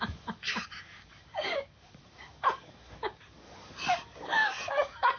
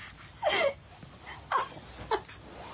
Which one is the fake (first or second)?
first